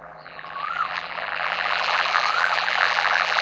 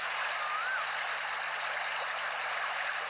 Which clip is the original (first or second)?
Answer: second